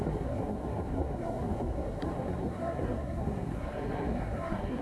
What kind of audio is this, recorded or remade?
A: remade